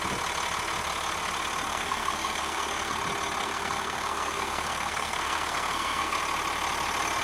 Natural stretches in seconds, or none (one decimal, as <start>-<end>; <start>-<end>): 0.0-1.7; 3.0-3.4; 6.2-7.2

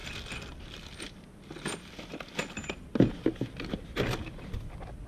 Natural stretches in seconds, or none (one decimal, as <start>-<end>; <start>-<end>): 0.0-5.1